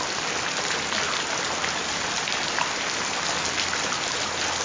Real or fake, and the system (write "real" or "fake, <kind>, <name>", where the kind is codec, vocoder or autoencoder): real